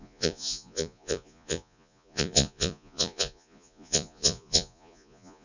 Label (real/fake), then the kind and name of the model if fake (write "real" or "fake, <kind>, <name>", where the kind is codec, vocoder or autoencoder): fake, vocoder, Vocos